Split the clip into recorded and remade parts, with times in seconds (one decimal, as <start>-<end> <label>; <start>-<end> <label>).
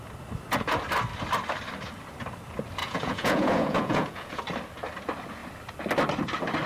0.0-2.8 recorded; 2.8-4.4 remade; 4.4-6.7 recorded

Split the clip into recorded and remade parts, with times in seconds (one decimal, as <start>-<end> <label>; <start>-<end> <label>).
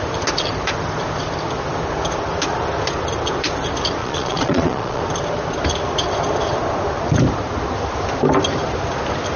0.0-4.0 recorded; 4.0-5.0 remade; 5.0-9.4 recorded